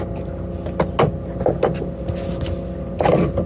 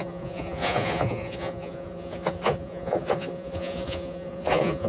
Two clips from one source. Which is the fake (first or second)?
second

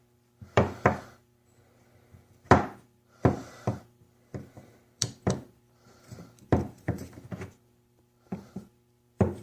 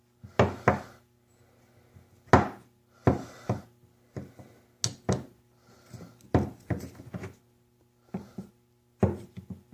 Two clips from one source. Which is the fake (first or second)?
first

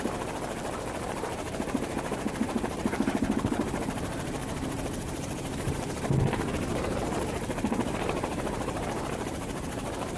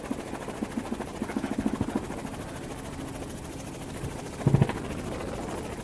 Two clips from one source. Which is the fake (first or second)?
first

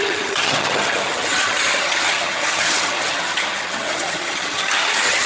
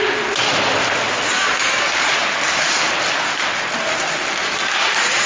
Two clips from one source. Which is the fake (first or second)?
first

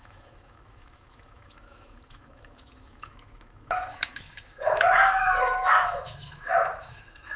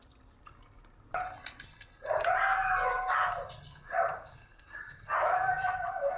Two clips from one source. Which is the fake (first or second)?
first